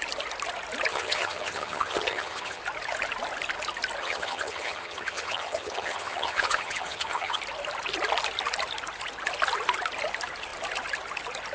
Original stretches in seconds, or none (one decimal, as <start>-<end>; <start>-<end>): 0.0-0.9; 2.6-4.0; 7.4-11.5